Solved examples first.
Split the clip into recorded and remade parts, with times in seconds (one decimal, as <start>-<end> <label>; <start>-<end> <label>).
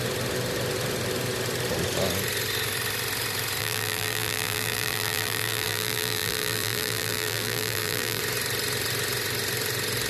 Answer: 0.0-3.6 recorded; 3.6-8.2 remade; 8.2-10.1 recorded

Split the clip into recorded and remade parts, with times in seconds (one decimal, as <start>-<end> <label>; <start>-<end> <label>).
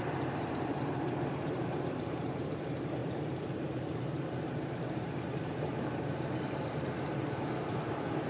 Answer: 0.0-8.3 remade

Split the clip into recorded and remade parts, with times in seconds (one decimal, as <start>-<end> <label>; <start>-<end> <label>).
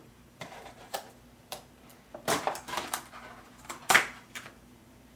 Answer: 0.0-5.2 remade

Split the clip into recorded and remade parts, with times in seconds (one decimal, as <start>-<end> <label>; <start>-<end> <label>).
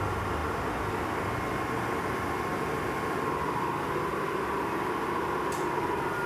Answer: 0.0-2.5 recorded; 2.5-3.7 remade; 3.7-6.3 recorded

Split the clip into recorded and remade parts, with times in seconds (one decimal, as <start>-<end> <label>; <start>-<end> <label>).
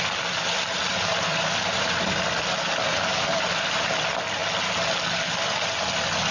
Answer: 0.0-0.9 recorded; 0.9-2.0 remade; 2.0-2.9 recorded; 2.9-3.9 remade; 3.9-6.3 recorded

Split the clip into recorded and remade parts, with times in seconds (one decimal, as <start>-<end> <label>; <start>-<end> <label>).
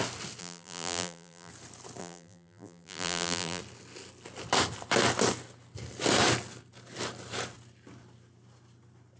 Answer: 0.0-0.4 recorded; 0.4-1.5 remade; 1.5-2.0 recorded; 2.0-3.6 remade; 3.6-9.2 recorded